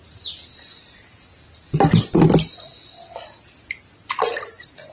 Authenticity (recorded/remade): recorded